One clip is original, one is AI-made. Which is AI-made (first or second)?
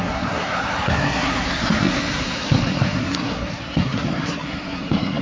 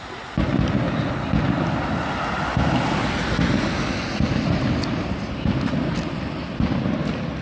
first